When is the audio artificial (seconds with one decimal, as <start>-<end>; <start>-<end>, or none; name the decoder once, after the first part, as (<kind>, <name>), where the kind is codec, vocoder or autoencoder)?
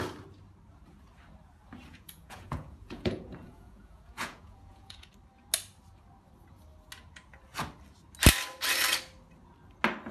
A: 1.9-5.1 (vocoder, Vocos)